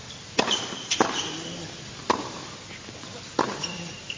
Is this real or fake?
fake